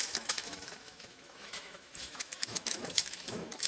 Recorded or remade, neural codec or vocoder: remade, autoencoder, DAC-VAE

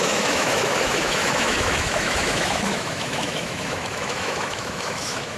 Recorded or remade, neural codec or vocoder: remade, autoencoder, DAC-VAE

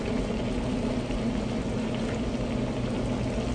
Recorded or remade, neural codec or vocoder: recorded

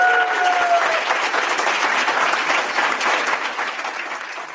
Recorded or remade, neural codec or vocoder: recorded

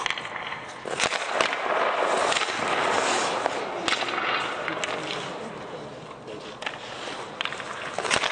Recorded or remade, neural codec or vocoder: recorded